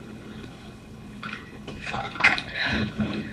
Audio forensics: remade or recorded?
remade